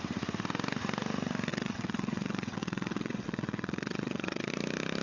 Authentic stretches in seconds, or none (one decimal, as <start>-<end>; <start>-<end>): 0.0-1.5; 4.5-5.0